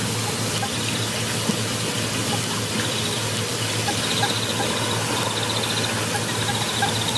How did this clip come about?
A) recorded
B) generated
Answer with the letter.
A